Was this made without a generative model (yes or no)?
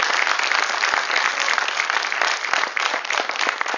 yes